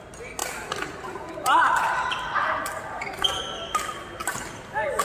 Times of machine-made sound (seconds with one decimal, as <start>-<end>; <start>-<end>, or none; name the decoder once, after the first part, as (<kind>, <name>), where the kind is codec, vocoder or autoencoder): 0.4-3.4 (vocoder, BigVGAN v2); 4.2-5.0